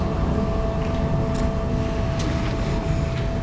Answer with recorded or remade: recorded